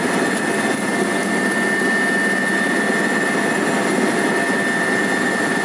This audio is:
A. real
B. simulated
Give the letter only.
A